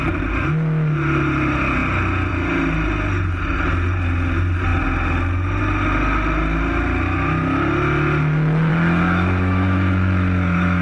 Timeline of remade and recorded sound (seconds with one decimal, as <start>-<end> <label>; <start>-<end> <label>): 0.0-8.7 recorded; 8.7-10.8 remade